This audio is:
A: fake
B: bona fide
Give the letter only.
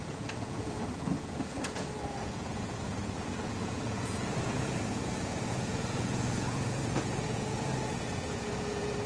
A